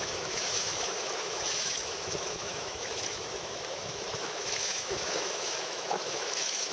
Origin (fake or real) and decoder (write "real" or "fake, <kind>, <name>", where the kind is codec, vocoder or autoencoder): fake, autoencoder, DAC-VAE